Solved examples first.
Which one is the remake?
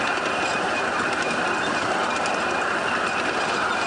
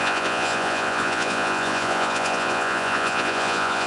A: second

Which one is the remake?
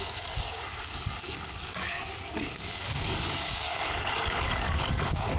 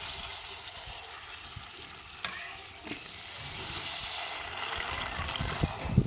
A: first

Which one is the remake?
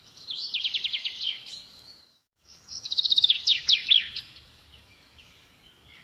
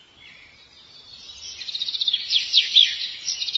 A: first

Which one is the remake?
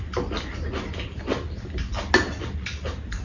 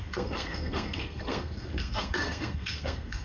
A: second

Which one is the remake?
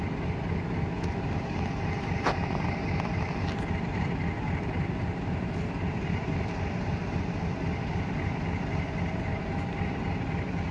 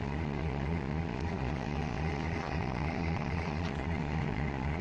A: second